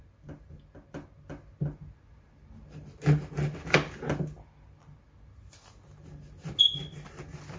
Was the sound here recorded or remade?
recorded